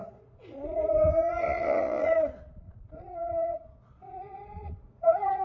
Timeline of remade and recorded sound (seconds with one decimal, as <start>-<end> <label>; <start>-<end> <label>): 0.0-5.4 remade